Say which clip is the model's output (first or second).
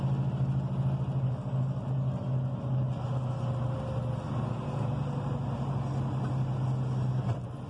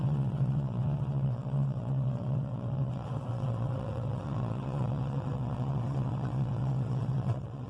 second